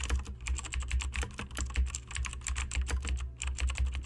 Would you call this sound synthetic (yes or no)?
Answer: no